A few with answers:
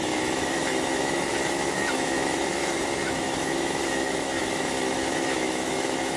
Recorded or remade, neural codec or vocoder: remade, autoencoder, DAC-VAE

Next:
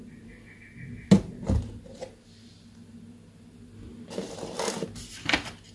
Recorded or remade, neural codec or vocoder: recorded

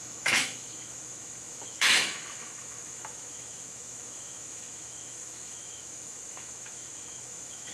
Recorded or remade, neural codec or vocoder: remade, autoencoder, DAC-VAE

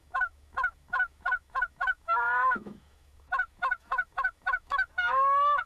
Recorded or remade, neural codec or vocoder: remade, autoencoder, DAC-VAE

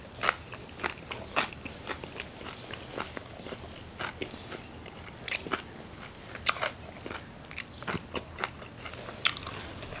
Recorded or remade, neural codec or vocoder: recorded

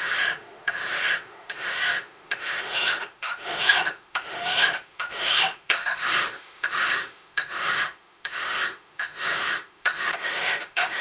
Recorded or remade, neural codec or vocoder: remade, autoencoder, DAC-VAE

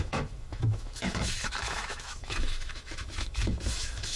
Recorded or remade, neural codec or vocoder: remade, autoencoder, DAC-VAE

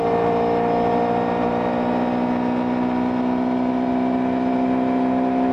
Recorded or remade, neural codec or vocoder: recorded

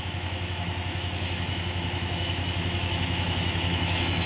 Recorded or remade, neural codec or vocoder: remade, autoencoder, DAC-VAE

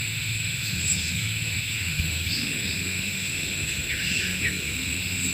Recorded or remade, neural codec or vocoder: remade, autoencoder, DAC-VAE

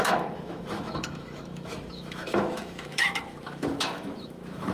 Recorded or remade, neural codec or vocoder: remade, autoencoder, DAC-VAE